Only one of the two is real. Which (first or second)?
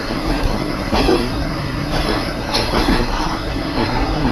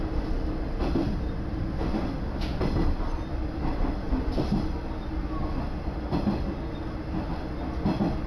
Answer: second